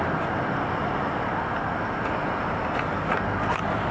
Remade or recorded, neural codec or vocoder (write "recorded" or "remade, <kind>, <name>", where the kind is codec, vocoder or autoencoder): recorded